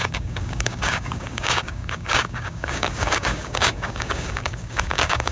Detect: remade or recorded remade